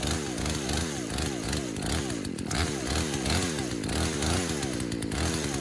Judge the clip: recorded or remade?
recorded